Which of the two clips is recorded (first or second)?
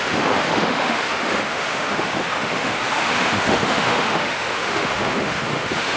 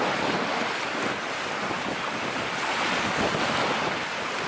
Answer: second